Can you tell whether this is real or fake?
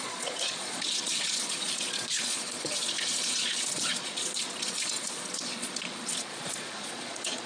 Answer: fake